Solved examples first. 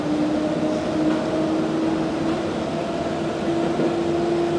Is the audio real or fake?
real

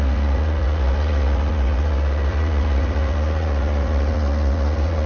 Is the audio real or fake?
fake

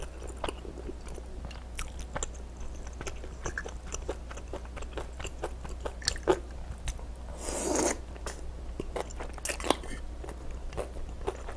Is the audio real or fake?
real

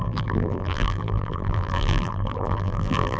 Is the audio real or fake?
fake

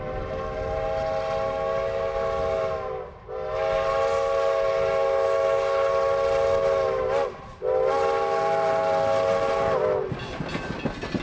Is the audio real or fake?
real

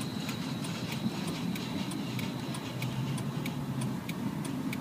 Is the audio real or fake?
real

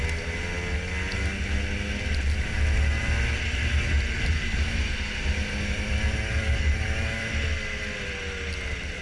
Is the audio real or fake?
real